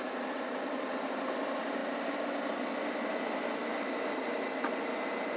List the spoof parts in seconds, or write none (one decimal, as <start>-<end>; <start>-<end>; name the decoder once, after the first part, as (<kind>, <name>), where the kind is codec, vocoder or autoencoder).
none